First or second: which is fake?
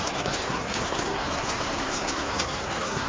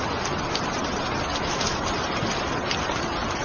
first